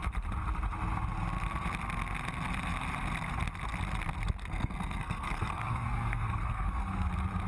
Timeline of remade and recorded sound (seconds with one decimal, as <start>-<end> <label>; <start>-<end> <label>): 0.0-4.4 recorded; 4.4-7.1 remade; 7.1-7.5 recorded